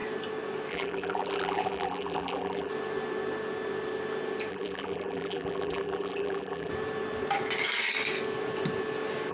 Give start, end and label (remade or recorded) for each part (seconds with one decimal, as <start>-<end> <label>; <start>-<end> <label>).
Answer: 0.0-0.7 recorded; 0.7-2.7 remade; 2.7-4.5 recorded; 4.5-6.7 remade; 6.7-9.3 recorded